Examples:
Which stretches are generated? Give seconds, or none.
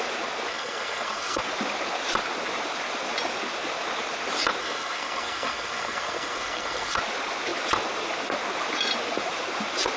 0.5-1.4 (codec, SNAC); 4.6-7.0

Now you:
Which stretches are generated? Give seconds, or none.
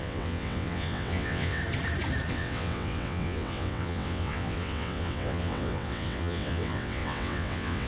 0.0-1.6 (vocoder, WaveNeXt); 2.3-7.9